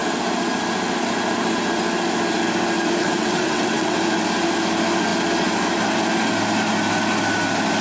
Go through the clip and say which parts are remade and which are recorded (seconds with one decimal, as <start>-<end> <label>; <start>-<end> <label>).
0.0-3.0 recorded; 3.0-4.0 remade; 4.0-7.8 recorded